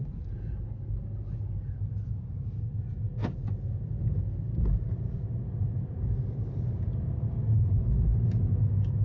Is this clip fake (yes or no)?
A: no